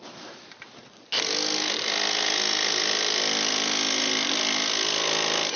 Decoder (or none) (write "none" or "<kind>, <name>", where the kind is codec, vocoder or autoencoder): none